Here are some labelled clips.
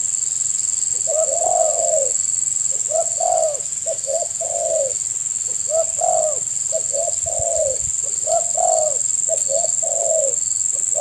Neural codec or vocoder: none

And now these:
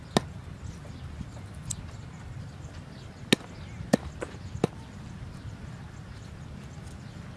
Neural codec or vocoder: none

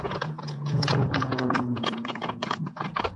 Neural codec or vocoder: vocoder, Vocos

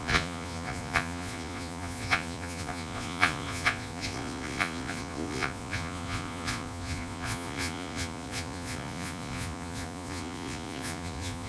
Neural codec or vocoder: vocoder, Vocos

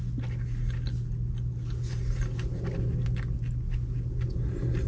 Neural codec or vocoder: none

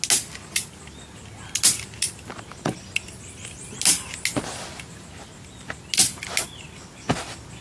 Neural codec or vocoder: none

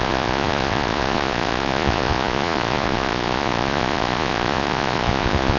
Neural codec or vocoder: vocoder, Vocos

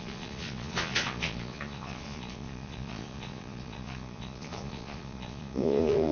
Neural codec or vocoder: vocoder, Vocos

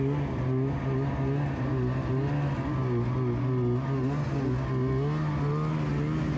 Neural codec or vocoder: none